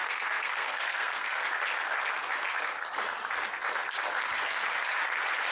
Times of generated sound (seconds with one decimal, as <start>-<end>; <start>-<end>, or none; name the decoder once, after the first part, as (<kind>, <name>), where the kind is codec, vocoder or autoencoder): 0.0-1.4 (codec, SNAC)